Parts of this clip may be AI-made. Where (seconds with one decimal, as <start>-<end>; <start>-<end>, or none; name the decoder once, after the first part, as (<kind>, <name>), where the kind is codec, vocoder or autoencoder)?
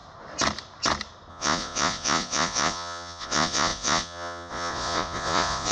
1.3-5.7 (vocoder, Vocos)